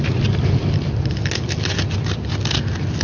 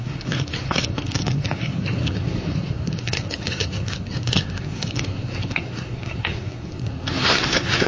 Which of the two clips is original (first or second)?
first